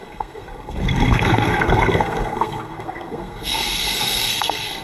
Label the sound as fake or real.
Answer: fake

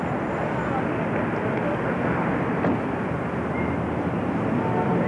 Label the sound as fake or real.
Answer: real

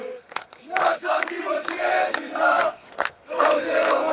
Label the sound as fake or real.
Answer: fake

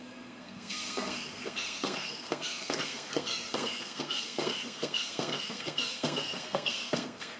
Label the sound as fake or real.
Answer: fake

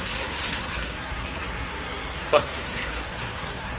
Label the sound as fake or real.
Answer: fake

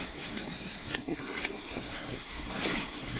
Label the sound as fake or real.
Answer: fake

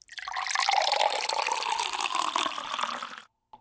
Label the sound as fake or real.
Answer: real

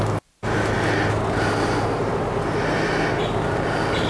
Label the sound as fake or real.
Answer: real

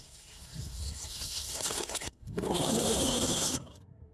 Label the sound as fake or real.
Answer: fake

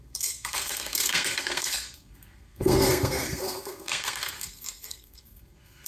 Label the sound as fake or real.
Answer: fake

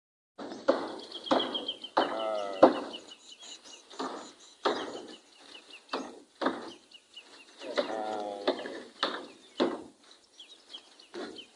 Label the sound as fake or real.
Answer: real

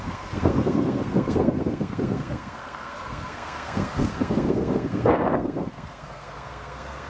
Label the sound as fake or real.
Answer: fake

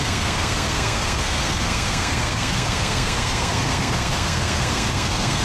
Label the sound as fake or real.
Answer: fake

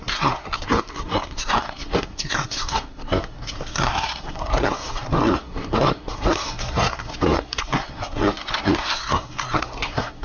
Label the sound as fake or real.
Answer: fake